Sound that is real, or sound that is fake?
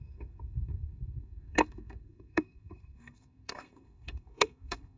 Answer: fake